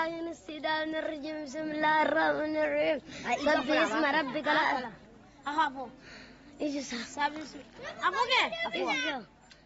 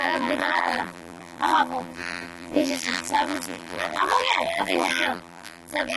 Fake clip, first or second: second